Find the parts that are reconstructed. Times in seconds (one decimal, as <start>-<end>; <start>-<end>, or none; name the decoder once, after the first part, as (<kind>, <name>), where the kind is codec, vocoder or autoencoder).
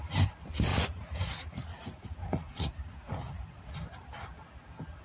0.7-3.7 (vocoder, Vocos)